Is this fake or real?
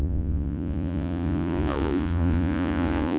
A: fake